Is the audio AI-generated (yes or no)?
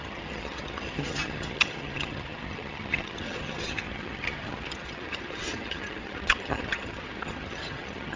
yes